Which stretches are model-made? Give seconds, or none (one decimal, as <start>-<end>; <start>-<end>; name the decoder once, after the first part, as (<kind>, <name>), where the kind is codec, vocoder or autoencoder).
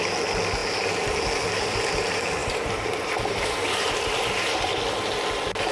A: 2.4-4.7 (vocoder, BigVGAN v2)